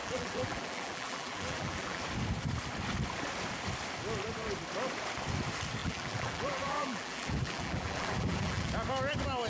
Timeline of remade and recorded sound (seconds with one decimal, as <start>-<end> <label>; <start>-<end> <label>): 0.0-2.0 remade; 2.0-5.8 recorded; 5.8-8.7 remade; 8.7-9.5 recorded